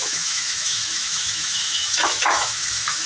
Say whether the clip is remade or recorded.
remade